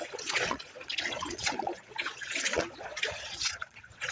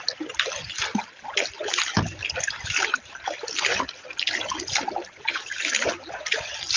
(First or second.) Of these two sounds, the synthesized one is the first